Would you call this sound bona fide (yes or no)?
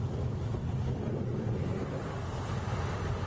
yes